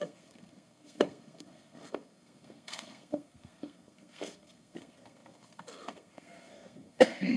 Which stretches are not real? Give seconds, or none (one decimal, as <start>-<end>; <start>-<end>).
0.0-7.4